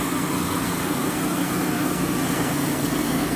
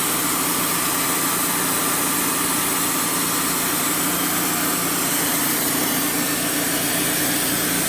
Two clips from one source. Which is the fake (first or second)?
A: first